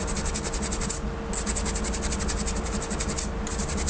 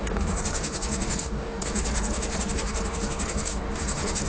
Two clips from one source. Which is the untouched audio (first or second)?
first